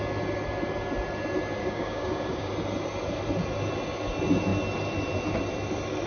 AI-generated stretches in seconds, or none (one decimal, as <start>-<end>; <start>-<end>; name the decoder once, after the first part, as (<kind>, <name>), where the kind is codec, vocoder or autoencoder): 1.6-2.5 (codec, DAC)